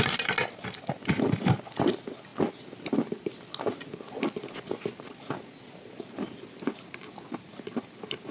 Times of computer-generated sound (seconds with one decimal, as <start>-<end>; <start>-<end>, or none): none